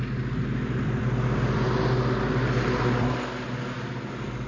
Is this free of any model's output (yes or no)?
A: yes